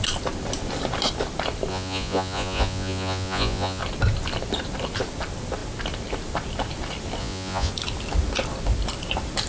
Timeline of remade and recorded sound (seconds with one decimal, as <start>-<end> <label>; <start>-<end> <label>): 0.0-1.7 recorded; 1.7-3.8 remade; 3.8-7.2 recorded; 7.2-7.7 remade; 7.7-9.5 recorded